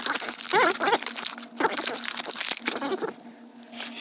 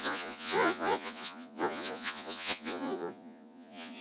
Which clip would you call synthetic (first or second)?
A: second